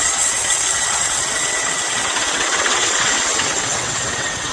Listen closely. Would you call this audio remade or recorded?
remade